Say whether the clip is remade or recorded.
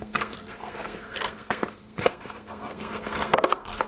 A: remade